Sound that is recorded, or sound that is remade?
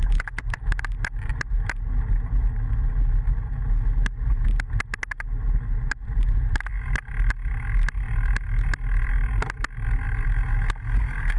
recorded